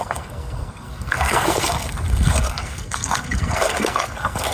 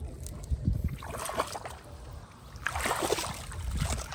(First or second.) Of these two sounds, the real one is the second